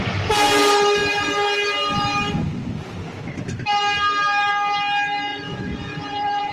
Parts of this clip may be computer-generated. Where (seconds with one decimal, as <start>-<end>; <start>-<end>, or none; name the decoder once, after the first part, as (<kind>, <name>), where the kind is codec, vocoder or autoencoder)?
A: 5.3-6.5 (vocoder, Vocos)